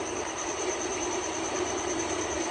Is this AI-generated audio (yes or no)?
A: yes